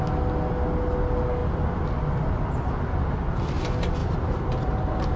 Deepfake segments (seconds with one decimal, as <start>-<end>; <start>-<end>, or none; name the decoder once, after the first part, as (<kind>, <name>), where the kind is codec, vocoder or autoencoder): 4.0-5.2 (vocoder, BigVGAN v2)